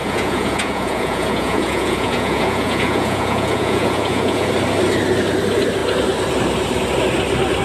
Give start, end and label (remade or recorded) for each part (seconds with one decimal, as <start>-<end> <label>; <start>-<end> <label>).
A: 0.0-4.5 remade; 4.5-7.6 recorded